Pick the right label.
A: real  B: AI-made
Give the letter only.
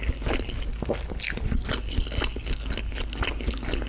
A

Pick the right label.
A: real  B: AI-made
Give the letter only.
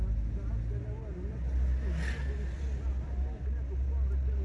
A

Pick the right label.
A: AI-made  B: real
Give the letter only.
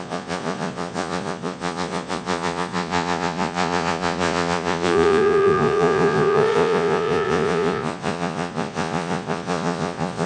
A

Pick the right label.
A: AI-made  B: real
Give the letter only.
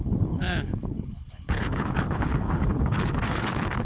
A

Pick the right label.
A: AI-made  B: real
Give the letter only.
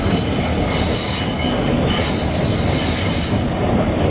B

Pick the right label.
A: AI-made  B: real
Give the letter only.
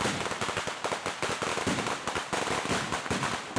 B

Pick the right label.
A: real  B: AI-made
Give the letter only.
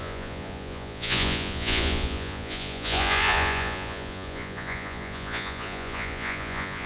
B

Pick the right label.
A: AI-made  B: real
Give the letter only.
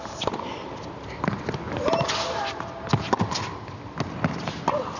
B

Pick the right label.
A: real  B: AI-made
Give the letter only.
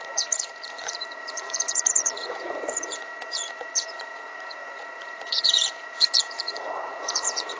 B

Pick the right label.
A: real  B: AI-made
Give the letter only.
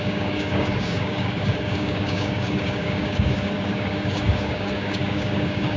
B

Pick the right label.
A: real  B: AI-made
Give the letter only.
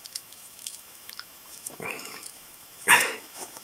B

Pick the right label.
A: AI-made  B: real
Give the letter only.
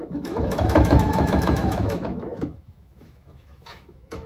A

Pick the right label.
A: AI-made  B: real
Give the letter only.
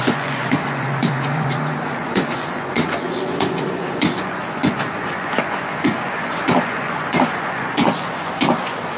A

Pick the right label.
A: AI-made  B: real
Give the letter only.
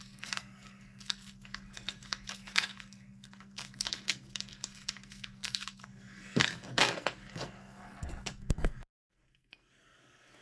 A